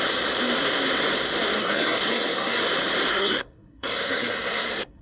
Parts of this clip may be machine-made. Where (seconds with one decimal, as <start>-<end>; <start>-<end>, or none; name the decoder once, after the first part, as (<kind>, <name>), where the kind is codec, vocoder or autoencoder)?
1.6-2.6 (codec, SNAC); 3.1-5.0

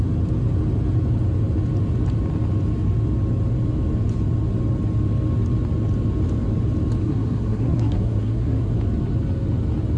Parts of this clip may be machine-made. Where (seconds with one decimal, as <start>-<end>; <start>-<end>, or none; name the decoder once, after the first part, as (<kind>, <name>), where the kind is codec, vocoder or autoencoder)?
7.0-8.7 (codec, SNAC)

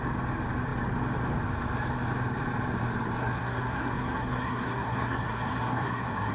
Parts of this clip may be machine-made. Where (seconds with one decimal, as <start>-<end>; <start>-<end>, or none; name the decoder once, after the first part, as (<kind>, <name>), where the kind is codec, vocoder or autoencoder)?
3.2-6.3 (codec, SNAC)

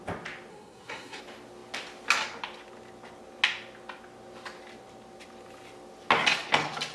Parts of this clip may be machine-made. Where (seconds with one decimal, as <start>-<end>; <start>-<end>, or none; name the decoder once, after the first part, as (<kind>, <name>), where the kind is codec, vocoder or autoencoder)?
0.5-1.2 (codec, SNAC)

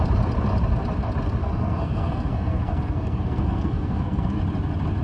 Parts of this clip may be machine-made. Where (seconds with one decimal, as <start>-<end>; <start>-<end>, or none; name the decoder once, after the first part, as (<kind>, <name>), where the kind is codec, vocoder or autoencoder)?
1.4-4.4 (codec, SNAC)

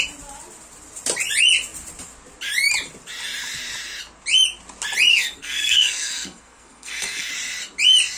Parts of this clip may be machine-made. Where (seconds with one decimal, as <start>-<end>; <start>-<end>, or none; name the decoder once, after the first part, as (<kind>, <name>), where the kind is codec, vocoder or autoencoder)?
5.1-7.3 (codec, SNAC)

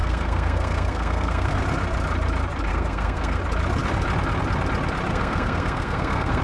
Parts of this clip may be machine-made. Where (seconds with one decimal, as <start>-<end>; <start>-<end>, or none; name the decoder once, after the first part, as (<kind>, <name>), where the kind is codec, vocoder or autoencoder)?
0.0-1.6 (codec, SNAC); 2.7-3.4; 5.1-6.4

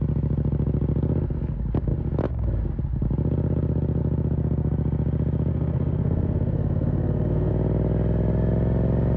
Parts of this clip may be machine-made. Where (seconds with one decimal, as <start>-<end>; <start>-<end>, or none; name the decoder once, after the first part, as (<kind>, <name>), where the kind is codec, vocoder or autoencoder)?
5.5-7.5 (codec, SNAC)